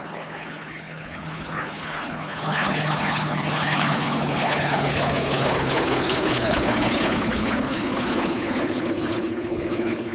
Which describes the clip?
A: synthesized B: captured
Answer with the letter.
A